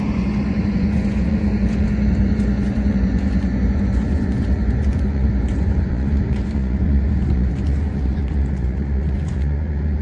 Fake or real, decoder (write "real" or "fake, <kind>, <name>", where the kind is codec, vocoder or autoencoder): fake, vocoder, Vocos